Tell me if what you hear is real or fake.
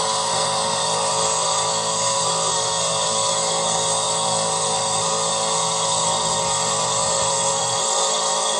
fake